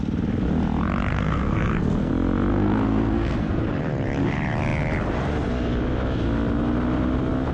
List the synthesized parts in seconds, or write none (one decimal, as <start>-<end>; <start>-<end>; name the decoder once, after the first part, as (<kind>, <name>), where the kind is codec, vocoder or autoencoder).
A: 1.1-2.1 (codec, SNAC); 2.5-3.6